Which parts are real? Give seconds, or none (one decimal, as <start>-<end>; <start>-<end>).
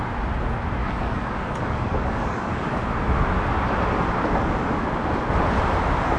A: 0.0-0.8; 2.8-6.2